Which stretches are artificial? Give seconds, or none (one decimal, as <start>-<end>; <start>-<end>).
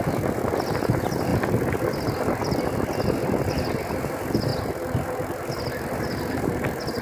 none